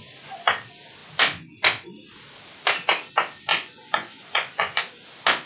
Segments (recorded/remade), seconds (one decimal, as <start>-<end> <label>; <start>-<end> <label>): 0.0-3.5 recorded; 3.5-4.8 remade; 4.8-5.5 recorded